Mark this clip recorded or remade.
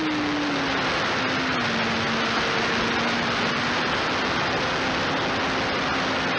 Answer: recorded